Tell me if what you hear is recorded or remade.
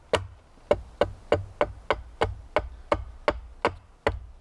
recorded